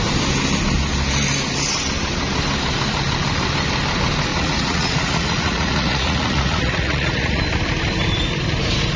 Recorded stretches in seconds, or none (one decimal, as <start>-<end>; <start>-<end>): 0.0-4.3; 7.4-9.0